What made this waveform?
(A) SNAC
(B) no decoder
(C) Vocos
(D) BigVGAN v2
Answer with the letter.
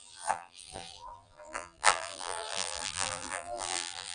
D